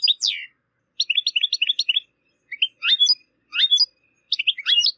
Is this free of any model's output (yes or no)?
yes